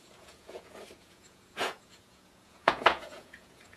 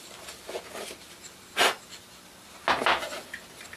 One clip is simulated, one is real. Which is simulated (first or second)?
first